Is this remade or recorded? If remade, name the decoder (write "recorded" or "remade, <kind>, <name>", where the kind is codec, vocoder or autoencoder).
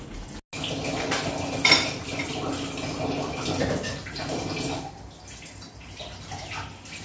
recorded